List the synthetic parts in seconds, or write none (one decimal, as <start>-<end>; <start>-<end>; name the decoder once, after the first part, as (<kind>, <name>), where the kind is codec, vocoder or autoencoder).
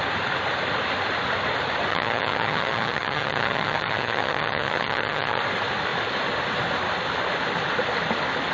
1.9-5.4 (vocoder, HiFi-GAN)